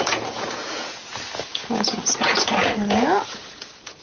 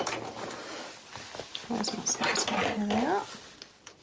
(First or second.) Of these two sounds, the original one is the second